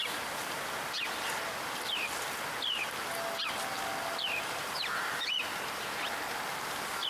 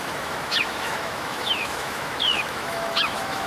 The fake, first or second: second